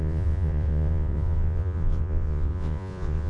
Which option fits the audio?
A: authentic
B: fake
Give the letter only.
B